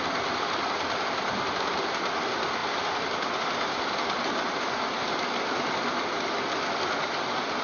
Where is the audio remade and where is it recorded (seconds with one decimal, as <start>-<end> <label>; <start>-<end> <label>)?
0.0-7.6 recorded